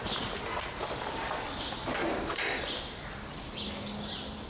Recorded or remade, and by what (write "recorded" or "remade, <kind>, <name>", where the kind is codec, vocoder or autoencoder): recorded